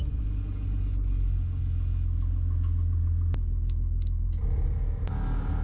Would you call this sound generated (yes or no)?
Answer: no